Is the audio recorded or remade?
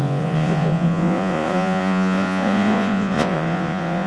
remade